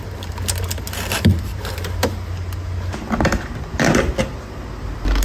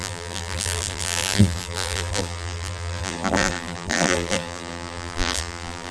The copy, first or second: second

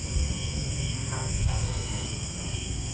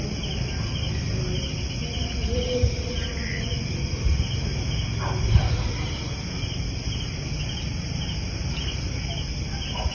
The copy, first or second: first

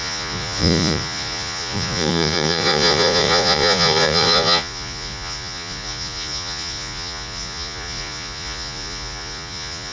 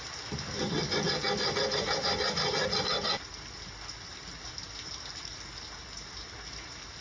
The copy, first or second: first